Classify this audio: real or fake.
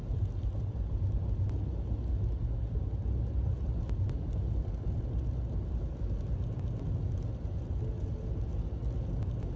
real